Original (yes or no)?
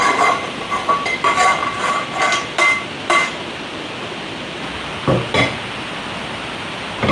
yes